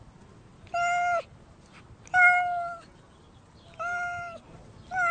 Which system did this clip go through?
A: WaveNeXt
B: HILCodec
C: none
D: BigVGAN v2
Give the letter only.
C